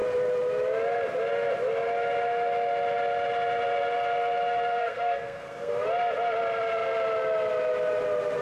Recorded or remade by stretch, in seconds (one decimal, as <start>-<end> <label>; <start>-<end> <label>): 0.0-4.8 recorded; 4.8-5.7 remade; 5.7-8.4 recorded